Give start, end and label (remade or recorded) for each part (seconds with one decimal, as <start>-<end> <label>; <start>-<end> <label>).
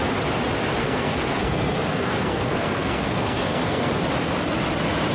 0.0-0.8 recorded; 0.8-3.9 remade; 3.9-5.1 recorded